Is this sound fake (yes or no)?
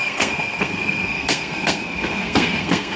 yes